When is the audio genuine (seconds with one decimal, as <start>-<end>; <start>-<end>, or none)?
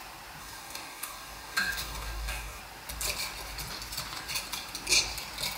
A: 0.0-0.4; 2.6-5.6